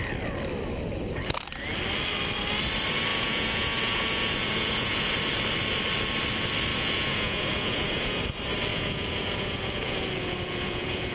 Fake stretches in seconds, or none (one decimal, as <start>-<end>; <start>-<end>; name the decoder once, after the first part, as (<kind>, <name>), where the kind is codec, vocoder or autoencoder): 3.1-5.1 (vocoder, Vocos); 6.7-8.2; 8.7-11.1